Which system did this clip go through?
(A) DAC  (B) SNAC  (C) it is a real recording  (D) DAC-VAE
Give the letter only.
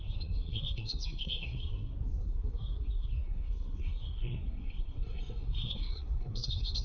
B